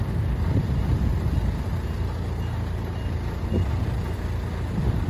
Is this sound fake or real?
real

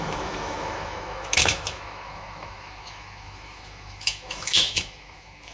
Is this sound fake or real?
fake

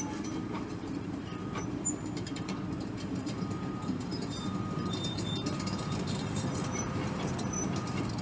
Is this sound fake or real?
fake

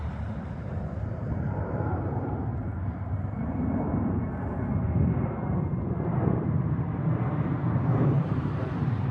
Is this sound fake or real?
fake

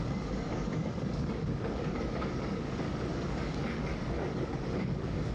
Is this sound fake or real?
fake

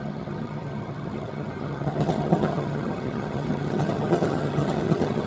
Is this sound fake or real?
fake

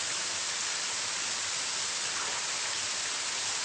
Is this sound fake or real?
real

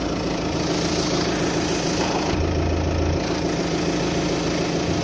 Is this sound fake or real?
real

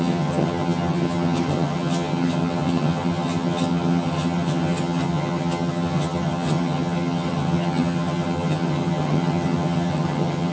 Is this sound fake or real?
fake